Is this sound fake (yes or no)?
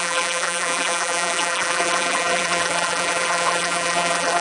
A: yes